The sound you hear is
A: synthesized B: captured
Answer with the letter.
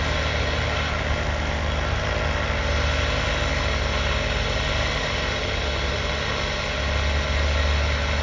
B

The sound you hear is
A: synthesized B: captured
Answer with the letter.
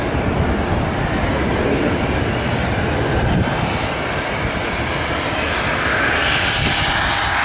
B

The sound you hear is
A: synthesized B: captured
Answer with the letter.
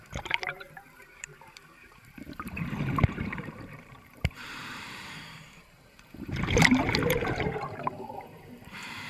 A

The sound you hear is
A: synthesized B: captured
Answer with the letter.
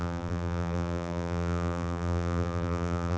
A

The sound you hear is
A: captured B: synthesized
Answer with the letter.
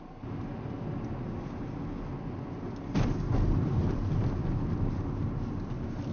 A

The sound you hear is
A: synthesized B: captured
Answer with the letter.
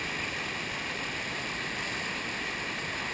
B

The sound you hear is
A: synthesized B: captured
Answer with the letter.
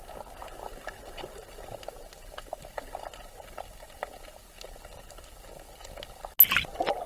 B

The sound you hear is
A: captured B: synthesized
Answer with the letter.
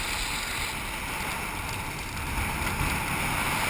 A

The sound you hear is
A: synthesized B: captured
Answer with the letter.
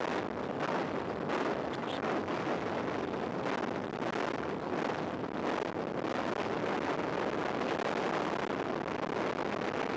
B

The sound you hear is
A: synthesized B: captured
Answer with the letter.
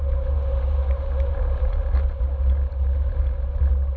B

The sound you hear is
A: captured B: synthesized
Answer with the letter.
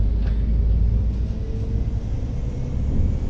A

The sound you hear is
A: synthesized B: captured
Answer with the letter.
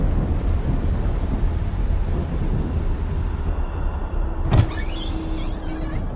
B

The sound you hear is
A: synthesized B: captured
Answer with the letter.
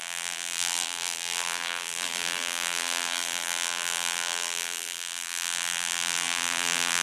A